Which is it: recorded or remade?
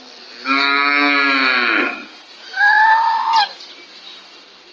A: recorded